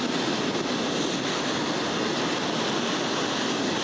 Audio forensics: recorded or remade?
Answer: recorded